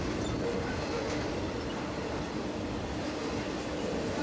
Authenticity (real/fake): real